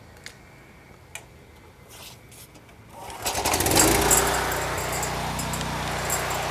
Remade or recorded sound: recorded